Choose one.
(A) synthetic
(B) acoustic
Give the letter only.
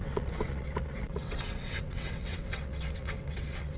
A